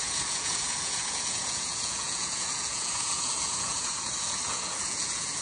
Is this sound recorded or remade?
remade